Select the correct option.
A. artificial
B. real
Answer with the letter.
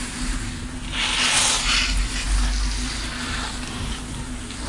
B